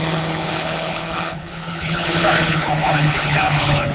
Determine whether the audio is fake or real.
fake